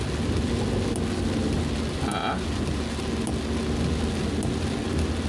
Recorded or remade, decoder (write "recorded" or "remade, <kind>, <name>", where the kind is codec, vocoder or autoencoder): recorded